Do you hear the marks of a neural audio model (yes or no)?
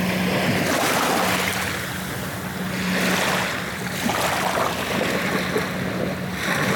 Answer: no